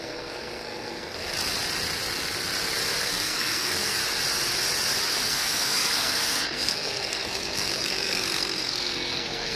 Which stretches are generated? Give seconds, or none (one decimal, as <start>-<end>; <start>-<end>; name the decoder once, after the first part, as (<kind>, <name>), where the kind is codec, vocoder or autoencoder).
0.0-1.3 (codec, SNAC); 3.0-4.0; 5.1-9.6